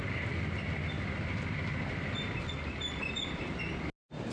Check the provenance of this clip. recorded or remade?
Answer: recorded